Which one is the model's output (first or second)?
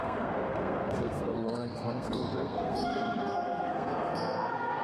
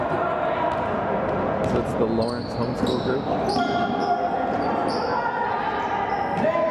first